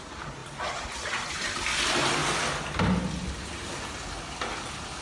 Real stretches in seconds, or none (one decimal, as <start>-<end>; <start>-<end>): 0.0-5.0